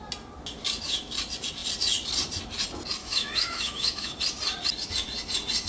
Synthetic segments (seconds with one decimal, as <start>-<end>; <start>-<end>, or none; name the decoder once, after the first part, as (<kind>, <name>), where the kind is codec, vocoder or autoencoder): 3.0-4.2 (autoencoder, DAC-VAE)